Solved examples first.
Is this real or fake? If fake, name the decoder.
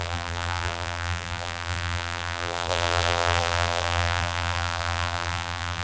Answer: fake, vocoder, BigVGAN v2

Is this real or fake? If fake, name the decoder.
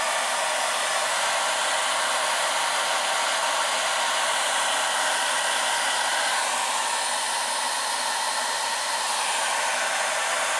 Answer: real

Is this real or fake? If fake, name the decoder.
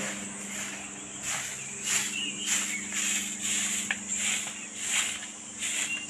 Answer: real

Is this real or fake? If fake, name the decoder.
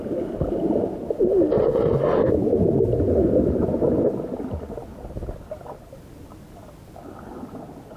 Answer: real